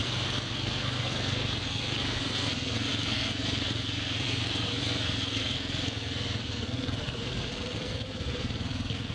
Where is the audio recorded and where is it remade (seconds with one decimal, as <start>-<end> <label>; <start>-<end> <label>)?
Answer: 0.0-9.1 remade